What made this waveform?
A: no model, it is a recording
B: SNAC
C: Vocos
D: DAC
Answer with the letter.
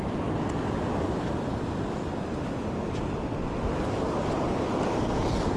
A